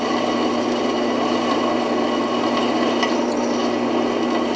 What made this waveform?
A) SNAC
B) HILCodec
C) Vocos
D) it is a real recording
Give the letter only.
D